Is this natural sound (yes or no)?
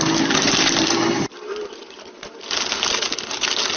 yes